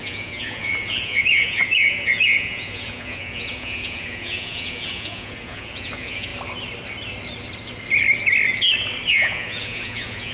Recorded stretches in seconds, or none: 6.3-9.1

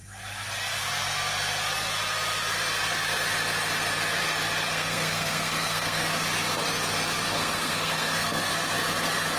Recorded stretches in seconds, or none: 0.0-4.7; 6.1-7.4; 8.5-9.4

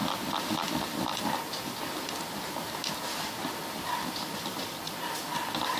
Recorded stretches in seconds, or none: 0.0-5.8

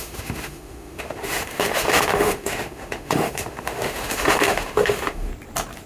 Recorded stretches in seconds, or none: 5.3-5.9

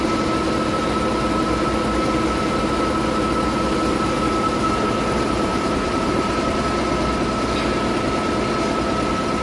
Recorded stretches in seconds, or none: 0.0-5.5; 6.6-9.4

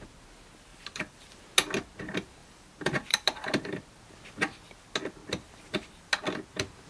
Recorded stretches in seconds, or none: 0.0-0.7; 1.4-2.4; 3.5-5.2; 6.1-6.9

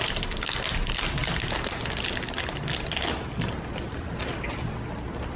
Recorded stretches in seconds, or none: 0.0-5.4